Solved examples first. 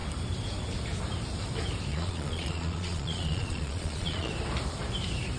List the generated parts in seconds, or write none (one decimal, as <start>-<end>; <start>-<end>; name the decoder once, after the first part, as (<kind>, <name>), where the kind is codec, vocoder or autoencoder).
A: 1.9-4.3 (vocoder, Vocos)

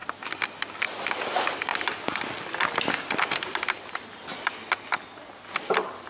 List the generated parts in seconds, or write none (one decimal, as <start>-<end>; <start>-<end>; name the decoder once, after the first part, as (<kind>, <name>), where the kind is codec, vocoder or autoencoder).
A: none

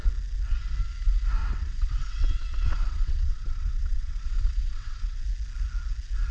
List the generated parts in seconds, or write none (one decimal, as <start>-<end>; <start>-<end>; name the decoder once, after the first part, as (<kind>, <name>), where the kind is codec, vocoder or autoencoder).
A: 1.4-5.2 (vocoder, WaveNeXt)

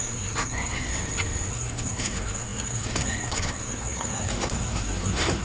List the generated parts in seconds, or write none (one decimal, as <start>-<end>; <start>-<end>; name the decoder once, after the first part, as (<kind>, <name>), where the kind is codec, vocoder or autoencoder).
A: 0.0-0.9 (codec, SNAC); 1.5-5.4

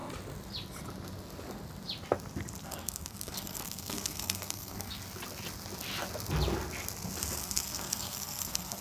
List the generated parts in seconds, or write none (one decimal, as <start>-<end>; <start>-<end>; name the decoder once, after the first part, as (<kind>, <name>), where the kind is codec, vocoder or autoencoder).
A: 2.6-5.0 (codec, SNAC); 7.4-8.8

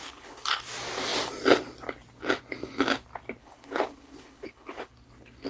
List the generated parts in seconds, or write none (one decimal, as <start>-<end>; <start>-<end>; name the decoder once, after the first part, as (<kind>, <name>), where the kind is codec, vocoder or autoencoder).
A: 0.0-0.6 (codec, HILCodec); 3.4-4.9